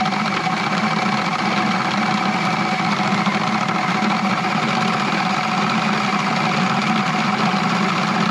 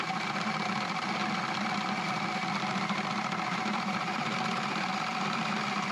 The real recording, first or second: first